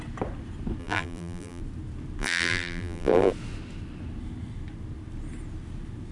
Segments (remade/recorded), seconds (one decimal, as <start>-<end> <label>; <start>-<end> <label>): 0.0-0.8 recorded; 0.8-1.6 remade; 1.6-2.2 recorded; 2.2-3.3 remade; 3.3-6.1 recorded